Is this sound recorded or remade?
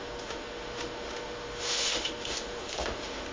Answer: remade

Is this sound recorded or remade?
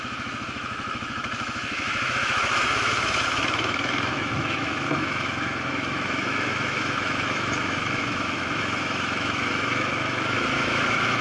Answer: remade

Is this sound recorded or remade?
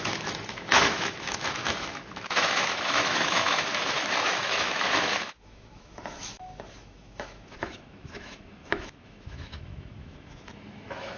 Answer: remade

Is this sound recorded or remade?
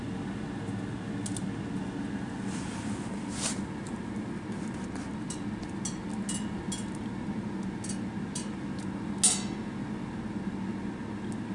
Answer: recorded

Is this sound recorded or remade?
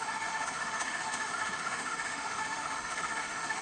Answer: remade